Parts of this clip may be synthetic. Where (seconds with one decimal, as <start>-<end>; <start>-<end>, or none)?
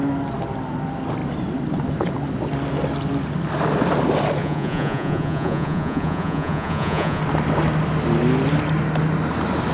4.4-7.2